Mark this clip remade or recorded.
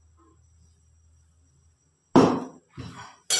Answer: recorded